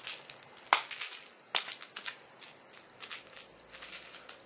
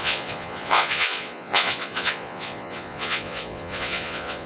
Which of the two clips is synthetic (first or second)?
second